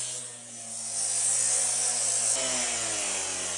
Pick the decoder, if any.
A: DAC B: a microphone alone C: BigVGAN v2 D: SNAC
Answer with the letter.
B